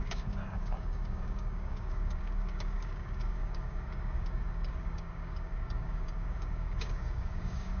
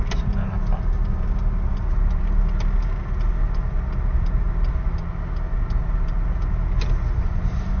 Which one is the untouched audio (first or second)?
second